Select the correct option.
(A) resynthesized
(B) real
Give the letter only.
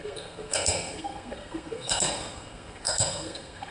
A